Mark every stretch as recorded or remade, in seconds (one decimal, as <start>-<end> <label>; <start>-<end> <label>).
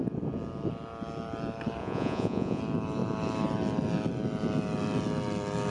0.0-1.8 recorded; 1.8-2.6 remade; 2.6-5.7 recorded